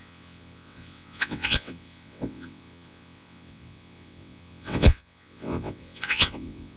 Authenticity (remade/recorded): remade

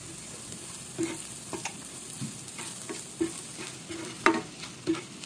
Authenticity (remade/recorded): recorded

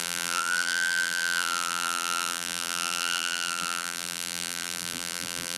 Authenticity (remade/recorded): remade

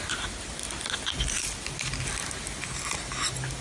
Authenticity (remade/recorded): recorded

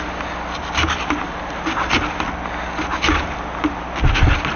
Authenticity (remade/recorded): recorded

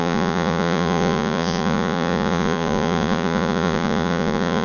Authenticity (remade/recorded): remade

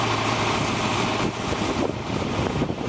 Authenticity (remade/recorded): remade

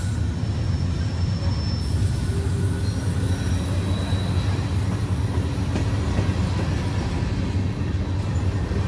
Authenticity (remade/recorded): recorded